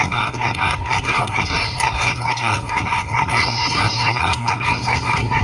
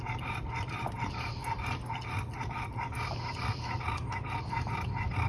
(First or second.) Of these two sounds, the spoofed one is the first